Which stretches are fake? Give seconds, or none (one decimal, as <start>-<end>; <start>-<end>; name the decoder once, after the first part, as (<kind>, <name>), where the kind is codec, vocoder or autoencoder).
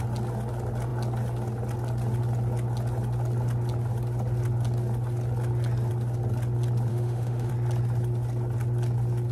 6.9-7.5 (autoencoder, DAC-VAE)